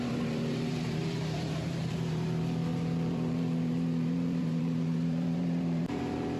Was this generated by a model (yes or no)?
yes